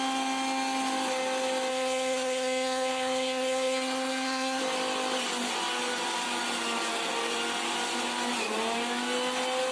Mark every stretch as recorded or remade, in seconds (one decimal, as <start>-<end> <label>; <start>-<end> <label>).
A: 0.0-1.7 recorded; 1.7-4.6 remade; 4.6-9.7 recorded

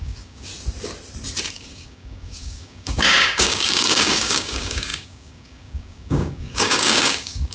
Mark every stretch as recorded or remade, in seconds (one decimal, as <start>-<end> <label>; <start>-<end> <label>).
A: 0.0-0.5 remade; 0.5-1.5 recorded; 1.5-7.5 remade

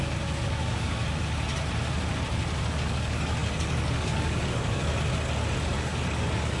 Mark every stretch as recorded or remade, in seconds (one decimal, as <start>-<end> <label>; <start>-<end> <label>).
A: 0.0-1.0 remade; 1.0-2.6 recorded; 2.6-4.9 remade; 4.9-5.8 recorded; 5.8-6.6 remade

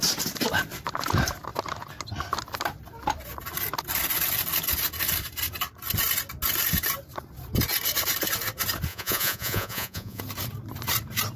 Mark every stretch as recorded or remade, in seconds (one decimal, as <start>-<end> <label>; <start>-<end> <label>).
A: 0.0-8.9 recorded; 8.9-10.2 remade; 10.2-11.4 recorded

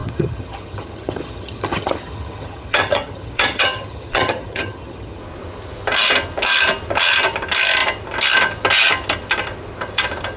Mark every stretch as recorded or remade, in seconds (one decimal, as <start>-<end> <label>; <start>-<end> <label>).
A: 0.0-5.2 remade; 5.2-10.4 recorded

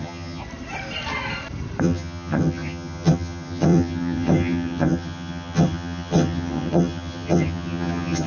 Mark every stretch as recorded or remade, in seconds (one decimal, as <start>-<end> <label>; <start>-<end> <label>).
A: 0.0-0.4 remade; 0.4-1.8 recorded; 1.8-8.3 remade

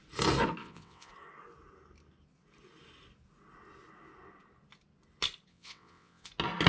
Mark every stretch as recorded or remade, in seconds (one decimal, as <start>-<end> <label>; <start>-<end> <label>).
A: 0.0-0.6 recorded; 0.6-1.1 remade; 1.1-5.5 recorded; 5.5-6.3 remade; 6.3-6.7 recorded